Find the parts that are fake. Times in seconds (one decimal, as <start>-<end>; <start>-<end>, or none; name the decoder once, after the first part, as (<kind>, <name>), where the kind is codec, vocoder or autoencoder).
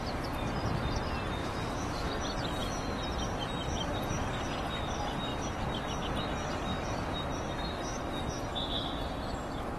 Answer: 1.4-2.1 (autoencoder, DAC-VAE)